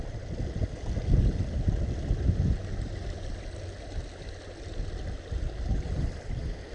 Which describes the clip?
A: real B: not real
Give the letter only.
A